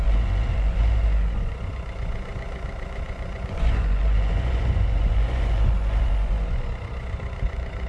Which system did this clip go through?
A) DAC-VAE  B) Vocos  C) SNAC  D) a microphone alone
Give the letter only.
B